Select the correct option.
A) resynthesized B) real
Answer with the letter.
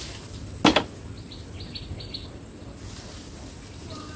B